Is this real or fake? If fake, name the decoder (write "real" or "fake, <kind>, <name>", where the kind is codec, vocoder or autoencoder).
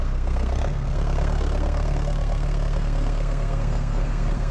fake, codec, SNAC